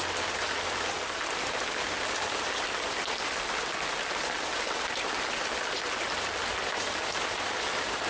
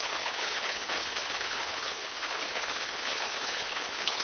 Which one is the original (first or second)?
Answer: first